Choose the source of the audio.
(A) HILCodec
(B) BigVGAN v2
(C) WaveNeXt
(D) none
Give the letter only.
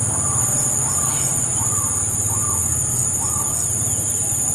D